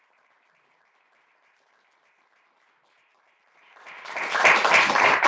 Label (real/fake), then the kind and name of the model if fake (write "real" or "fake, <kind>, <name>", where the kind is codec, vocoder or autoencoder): real